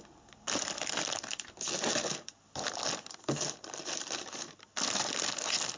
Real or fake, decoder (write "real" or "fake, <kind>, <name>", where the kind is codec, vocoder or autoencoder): real